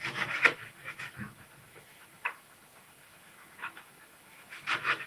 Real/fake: fake